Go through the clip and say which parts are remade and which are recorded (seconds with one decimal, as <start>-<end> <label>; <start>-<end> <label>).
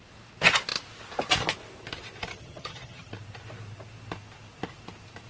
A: 0.0-2.3 recorded; 2.3-3.1 remade; 3.1-5.3 recorded